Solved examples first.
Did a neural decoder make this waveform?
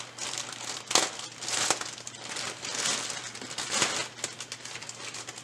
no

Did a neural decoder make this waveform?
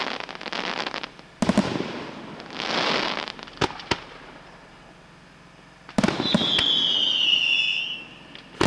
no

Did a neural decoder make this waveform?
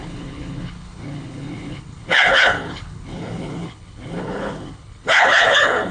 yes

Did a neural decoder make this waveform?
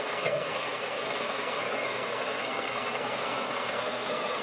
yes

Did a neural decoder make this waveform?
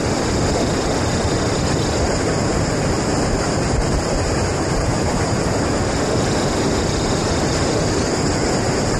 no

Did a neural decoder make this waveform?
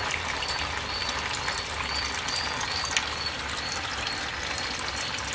no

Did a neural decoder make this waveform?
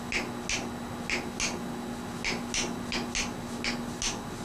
no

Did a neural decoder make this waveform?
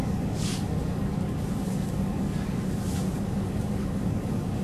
yes